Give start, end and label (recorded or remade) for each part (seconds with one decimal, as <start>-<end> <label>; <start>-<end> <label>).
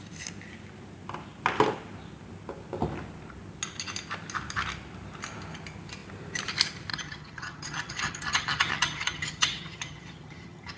0.0-6.9 recorded; 6.9-10.8 remade